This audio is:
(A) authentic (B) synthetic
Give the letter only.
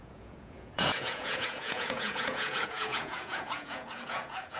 B